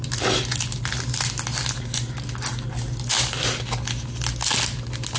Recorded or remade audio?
recorded